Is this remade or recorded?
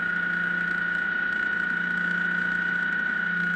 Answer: remade